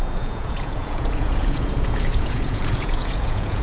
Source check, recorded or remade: remade